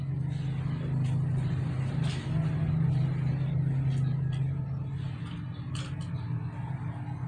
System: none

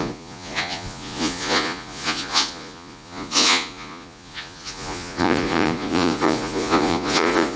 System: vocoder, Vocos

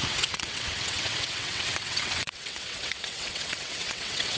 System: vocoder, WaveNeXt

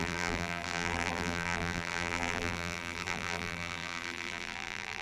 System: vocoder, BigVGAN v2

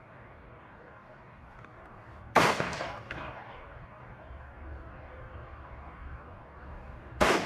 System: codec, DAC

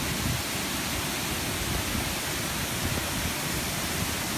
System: none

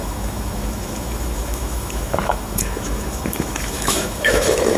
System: autoencoder, DAC-VAE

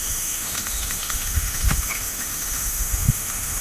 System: autoencoder, DAC-VAE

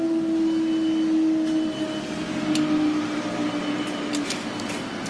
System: none